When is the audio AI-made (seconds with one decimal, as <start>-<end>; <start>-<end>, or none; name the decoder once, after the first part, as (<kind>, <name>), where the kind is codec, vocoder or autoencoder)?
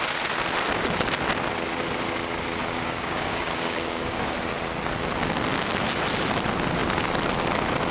2.6-4.3 (codec, DAC)